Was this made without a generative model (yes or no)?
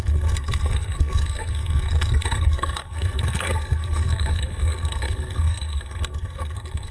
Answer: no